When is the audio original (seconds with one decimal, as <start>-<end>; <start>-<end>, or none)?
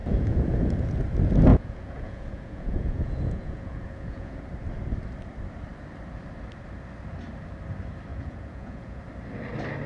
1.0-1.5; 4.4-8.1; 9.0-9.9